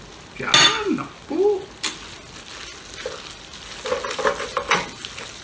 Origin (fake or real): real